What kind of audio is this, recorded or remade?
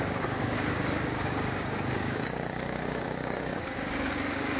remade